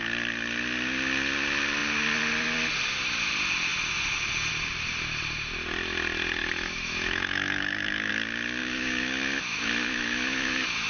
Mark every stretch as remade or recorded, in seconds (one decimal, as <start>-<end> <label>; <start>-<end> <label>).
0.0-6.4 recorded; 6.4-8.1 remade; 8.1-8.6 recorded; 8.6-10.9 remade